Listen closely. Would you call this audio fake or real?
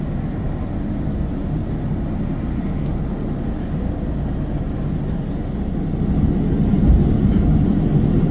real